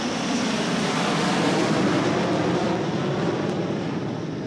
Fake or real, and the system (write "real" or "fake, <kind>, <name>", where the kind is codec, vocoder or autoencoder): real